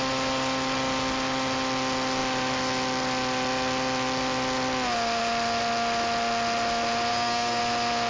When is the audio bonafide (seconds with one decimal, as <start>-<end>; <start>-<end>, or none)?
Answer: 0.0-7.1; 7.6-8.1